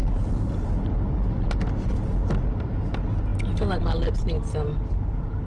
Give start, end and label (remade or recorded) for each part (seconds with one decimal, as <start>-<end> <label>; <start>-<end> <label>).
0.0-0.7 remade; 0.7-5.5 recorded